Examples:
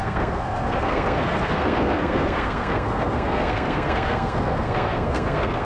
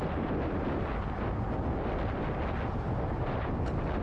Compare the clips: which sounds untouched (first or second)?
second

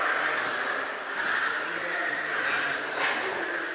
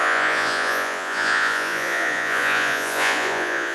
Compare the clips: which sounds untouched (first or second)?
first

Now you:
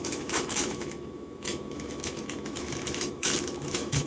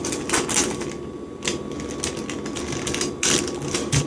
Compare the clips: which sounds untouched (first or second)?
second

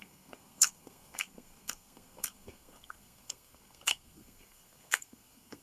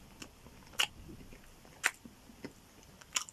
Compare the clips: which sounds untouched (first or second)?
second